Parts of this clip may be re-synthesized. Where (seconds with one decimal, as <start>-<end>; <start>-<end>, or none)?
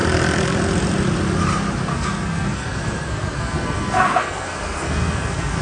1.9-5.6